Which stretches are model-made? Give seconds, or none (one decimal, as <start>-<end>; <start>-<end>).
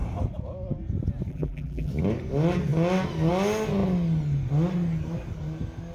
1.3-1.9